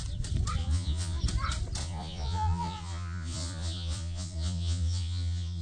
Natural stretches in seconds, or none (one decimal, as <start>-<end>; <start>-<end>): 0.0-0.6; 1.2-1.8